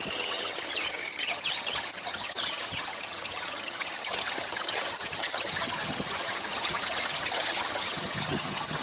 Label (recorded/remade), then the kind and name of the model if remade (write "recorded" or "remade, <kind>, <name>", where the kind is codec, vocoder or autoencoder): remade, vocoder, HiFi-GAN